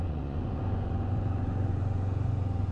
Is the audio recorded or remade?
remade